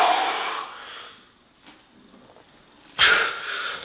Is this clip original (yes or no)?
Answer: yes